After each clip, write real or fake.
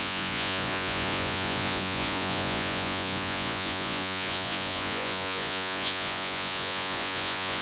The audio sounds fake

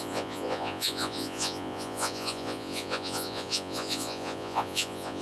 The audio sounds fake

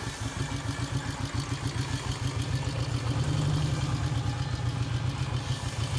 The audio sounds real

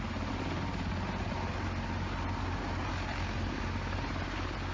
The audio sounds real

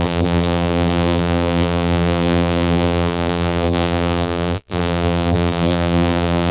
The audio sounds fake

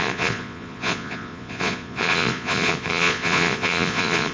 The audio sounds fake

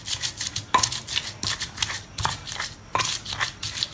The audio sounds real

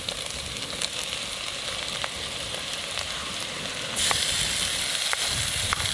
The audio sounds real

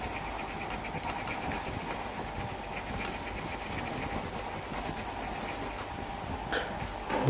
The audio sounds real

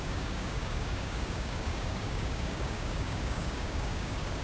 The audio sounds fake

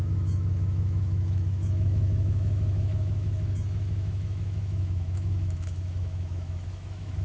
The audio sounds fake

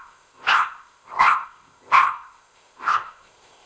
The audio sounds fake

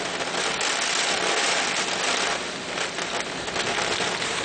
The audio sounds real